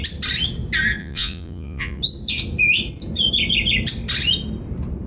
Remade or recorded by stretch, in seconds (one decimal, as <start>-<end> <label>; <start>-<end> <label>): 0.0-1.0 recorded; 1.0-2.0 remade; 2.0-5.1 recorded